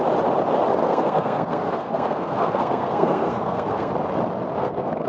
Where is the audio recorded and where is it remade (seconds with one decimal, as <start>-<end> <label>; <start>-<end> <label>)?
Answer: 0.0-0.8 recorded; 0.8-3.9 remade; 3.9-4.6 recorded; 4.6-5.1 remade